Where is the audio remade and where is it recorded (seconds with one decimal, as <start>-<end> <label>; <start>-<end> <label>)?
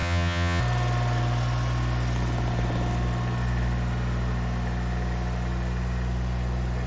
0.0-0.6 remade; 0.6-6.9 recorded